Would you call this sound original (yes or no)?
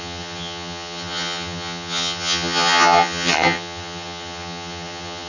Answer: no